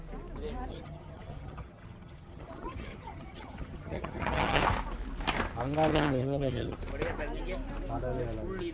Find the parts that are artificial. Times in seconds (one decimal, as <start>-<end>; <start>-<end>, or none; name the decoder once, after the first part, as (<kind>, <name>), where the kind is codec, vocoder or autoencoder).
0.7-4.6 (vocoder, HiFi-GAN); 5.9-6.8